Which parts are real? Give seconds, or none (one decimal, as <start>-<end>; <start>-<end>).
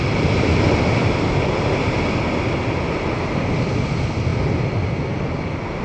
0.0-5.8